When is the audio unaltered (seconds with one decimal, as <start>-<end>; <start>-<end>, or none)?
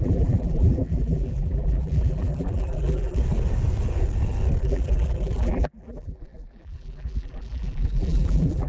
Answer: 3.2-4.6